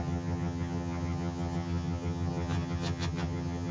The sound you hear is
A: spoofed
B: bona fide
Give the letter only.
A